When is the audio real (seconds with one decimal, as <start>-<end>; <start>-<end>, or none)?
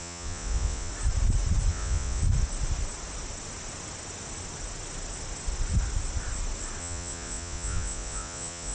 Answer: 0.9-1.7; 2.2-6.8